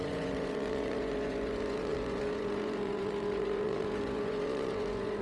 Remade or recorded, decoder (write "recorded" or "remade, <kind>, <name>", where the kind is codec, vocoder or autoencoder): remade, vocoder, Vocos